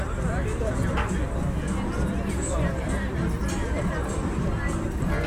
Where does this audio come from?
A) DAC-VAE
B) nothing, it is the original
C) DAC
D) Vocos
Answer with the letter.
B